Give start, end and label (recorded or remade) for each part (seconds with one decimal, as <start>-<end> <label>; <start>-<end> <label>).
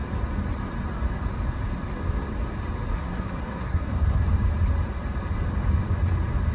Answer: 0.0-2.9 recorded; 2.9-4.2 remade; 4.2-6.5 recorded